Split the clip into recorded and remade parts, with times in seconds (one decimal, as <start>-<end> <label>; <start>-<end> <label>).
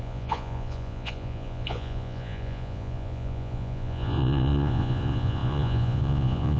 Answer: 0.0-6.6 remade